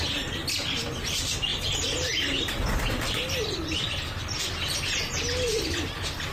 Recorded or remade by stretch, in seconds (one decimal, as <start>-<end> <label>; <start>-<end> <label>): 0.0-1.5 recorded; 1.5-4.5 remade; 4.5-6.3 recorded